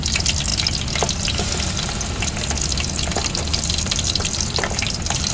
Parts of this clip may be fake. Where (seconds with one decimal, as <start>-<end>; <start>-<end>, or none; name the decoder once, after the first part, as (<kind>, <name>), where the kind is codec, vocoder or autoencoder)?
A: none